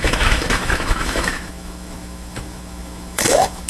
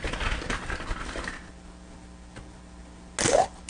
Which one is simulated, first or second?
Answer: first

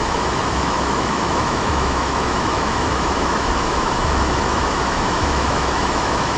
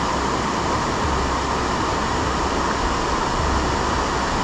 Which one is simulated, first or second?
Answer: first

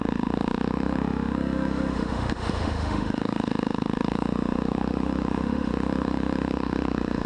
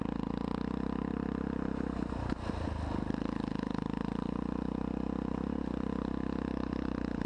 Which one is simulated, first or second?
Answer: first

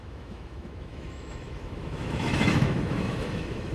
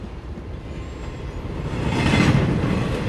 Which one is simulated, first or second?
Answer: first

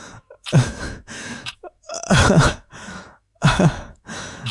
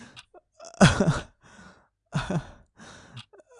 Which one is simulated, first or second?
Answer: first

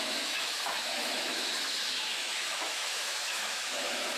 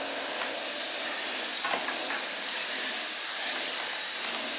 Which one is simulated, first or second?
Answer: first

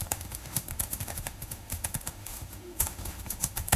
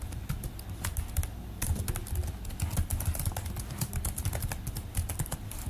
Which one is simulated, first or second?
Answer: first